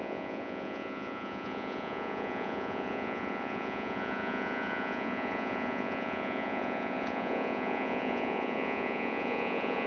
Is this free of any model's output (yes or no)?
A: no